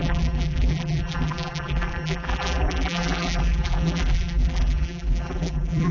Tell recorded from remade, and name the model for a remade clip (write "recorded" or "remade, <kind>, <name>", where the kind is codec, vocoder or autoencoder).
remade, vocoder, BigVGAN v2